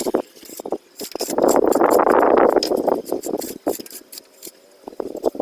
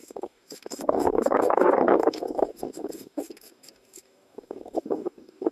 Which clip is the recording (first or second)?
first